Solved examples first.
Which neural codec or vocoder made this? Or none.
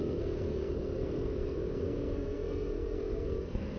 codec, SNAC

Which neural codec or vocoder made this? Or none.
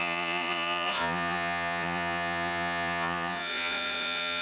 vocoder, Vocos